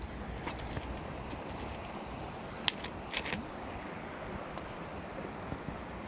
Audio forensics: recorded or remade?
recorded